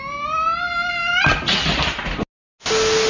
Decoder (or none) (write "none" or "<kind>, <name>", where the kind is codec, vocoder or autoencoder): none